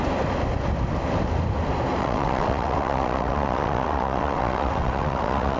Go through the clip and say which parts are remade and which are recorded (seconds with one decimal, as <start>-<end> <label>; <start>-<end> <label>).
0.0-2.0 recorded; 2.0-5.6 remade

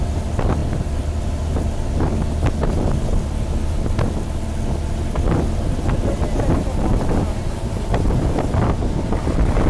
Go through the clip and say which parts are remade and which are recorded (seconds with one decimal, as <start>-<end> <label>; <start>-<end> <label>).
0.0-9.7 recorded

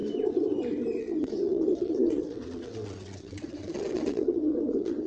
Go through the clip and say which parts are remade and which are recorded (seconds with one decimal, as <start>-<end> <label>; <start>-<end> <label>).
0.0-1.0 recorded; 1.0-5.1 remade

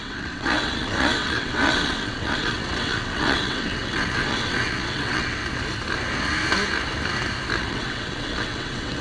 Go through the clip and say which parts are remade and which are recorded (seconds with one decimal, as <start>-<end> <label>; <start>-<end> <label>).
0.0-5.4 remade; 5.4-7.6 recorded; 7.6-9.0 remade

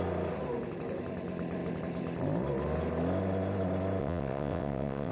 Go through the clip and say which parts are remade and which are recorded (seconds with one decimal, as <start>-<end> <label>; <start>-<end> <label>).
0.0-4.0 recorded; 4.0-5.1 remade

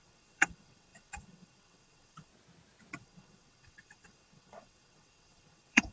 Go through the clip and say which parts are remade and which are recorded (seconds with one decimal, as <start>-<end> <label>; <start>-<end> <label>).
0.0-2.3 remade; 2.3-3.0 recorded; 3.0-5.9 remade

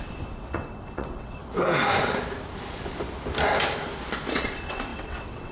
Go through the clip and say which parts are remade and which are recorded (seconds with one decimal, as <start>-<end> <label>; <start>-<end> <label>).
0.0-1.4 remade; 1.4-4.3 recorded; 4.3-5.5 remade

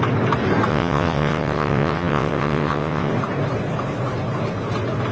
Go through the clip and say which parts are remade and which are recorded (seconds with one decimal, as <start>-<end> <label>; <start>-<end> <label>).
0.0-0.7 recorded; 0.7-3.1 remade; 3.1-5.1 recorded